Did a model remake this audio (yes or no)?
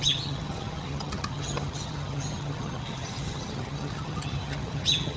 yes